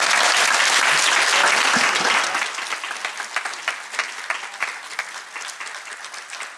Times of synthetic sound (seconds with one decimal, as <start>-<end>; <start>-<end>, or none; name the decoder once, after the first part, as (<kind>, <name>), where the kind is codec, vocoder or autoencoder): none